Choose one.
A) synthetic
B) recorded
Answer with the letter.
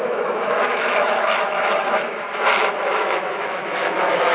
A